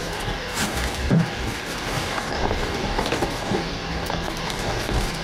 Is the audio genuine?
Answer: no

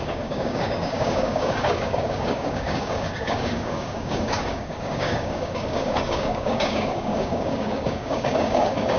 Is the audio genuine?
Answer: no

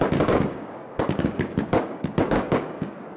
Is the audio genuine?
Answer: no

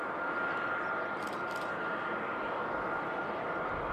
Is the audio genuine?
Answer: yes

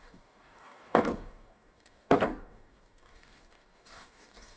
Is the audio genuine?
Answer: no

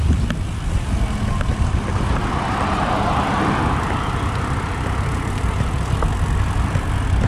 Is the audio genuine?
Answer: yes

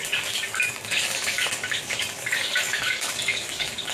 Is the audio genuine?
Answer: no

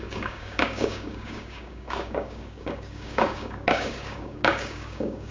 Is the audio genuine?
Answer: no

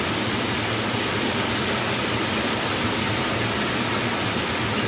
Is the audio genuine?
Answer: yes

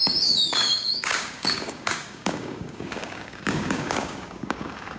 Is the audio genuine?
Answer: no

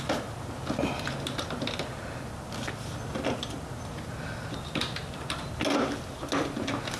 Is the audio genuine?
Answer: yes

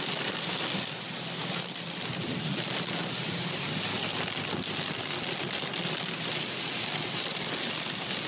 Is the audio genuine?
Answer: yes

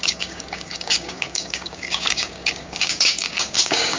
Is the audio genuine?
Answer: no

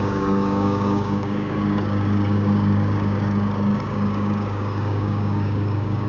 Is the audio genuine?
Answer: no